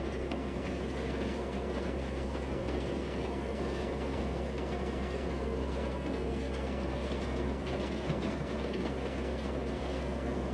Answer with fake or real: fake